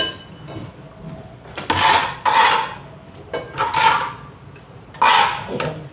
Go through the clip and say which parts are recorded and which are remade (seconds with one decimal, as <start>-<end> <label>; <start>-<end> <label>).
0.0-5.9 recorded